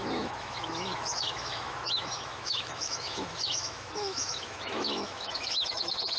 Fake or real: fake